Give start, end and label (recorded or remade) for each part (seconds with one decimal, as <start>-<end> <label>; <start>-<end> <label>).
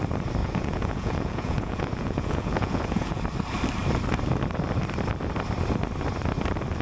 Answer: 0.0-0.4 recorded; 0.4-3.2 remade; 3.2-6.8 recorded